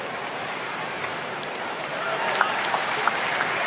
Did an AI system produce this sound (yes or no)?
yes